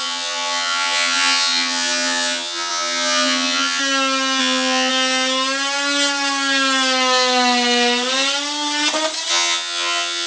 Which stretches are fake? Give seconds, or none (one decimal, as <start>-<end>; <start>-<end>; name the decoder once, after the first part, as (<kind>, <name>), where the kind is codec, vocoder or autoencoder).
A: 0.0-3.8 (vocoder, HiFi-GAN); 4.4-4.9; 9.3-10.3